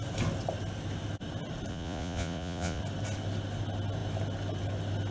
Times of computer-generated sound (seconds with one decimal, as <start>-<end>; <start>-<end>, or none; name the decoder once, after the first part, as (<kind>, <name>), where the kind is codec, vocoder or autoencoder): 1.7-2.8 (vocoder, Vocos)